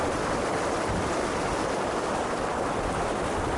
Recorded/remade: recorded